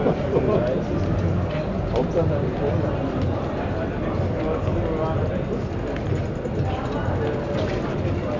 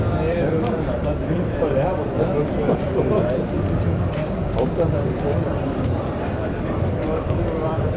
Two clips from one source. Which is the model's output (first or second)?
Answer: second